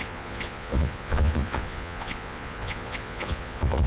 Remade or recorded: remade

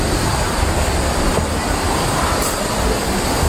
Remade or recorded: remade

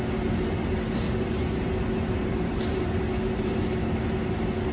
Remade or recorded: recorded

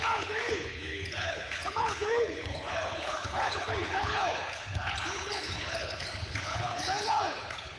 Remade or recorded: remade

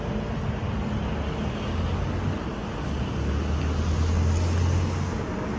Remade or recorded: recorded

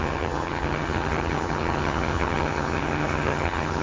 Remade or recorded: remade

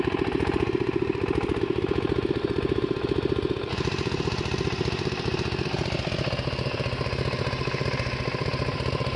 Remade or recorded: remade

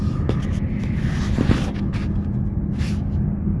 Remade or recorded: recorded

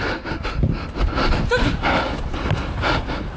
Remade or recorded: recorded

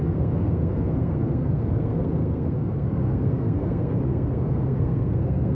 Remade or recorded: remade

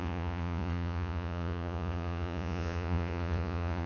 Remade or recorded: remade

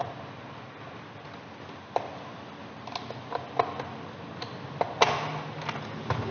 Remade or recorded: recorded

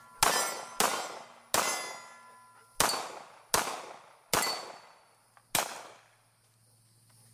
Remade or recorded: recorded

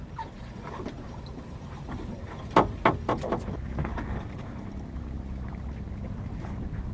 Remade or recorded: recorded